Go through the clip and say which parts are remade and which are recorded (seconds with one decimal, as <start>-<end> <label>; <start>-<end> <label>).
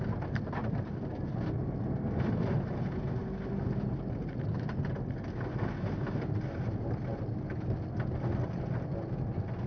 0.0-9.7 recorded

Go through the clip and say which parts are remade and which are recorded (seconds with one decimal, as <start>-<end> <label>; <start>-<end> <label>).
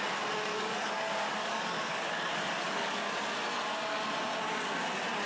0.0-0.5 recorded; 0.5-3.1 remade; 3.1-5.3 recorded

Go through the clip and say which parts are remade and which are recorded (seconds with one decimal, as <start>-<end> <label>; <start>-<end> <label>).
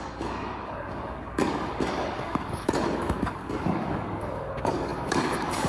0.0-5.7 remade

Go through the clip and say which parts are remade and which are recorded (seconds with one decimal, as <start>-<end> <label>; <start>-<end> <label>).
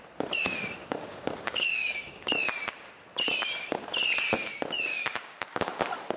0.0-0.8 recorded; 0.8-2.3 remade; 2.3-4.9 recorded; 4.9-5.7 remade; 5.7-6.2 recorded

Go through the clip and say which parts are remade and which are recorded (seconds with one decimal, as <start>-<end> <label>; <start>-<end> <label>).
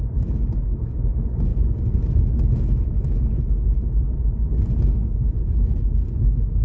0.0-6.6 recorded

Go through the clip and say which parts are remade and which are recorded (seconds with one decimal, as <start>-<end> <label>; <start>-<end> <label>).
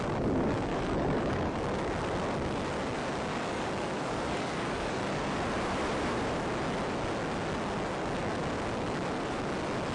0.0-0.7 recorded; 0.7-1.5 remade; 1.5-3.3 recorded; 3.3-5.1 remade; 5.1-9.9 recorded